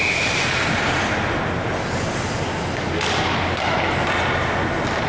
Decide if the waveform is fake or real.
real